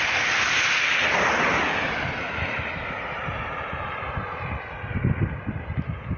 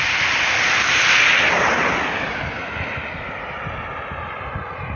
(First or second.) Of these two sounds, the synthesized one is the first